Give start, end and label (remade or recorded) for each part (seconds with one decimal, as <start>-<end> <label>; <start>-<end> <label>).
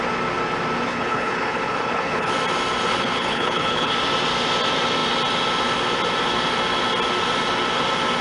0.0-0.9 recorded; 0.9-2.3 remade; 2.3-2.9 recorded; 2.9-3.9 remade; 3.9-8.2 recorded